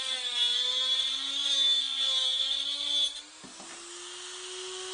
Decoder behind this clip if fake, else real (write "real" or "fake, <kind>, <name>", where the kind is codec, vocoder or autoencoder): real